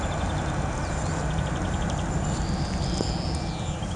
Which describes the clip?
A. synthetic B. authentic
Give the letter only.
B